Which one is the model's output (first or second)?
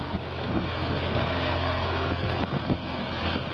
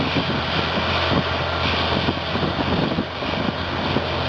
first